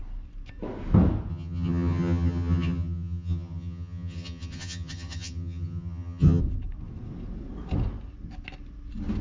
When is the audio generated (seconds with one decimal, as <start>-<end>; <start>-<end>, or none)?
1.3-6.4